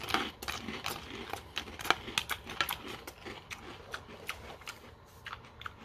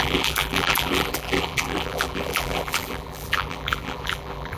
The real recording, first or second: first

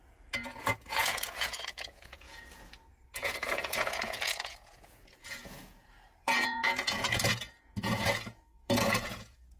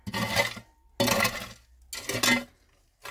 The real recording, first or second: second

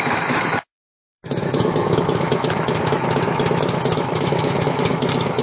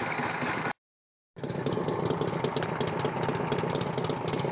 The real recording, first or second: second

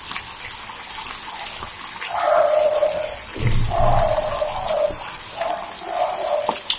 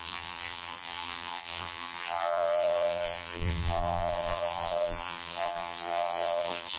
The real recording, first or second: first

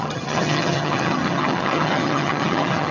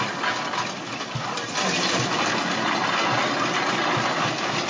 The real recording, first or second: second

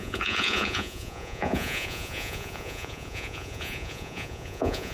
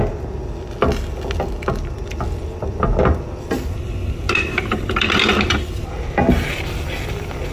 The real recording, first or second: second